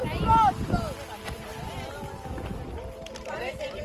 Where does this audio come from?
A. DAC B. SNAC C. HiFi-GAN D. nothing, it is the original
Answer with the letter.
D